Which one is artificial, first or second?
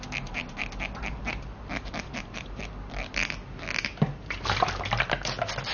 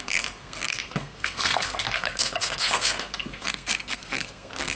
second